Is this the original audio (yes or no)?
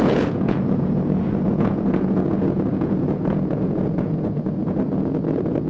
no